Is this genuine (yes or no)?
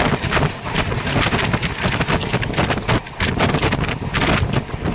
yes